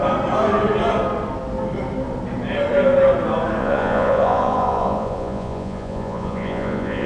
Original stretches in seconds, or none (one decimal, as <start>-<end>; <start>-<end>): 0.0-3.6